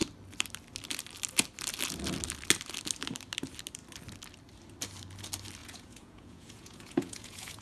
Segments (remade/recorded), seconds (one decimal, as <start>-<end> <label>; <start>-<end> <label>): 0.0-5.6 recorded; 5.6-7.6 remade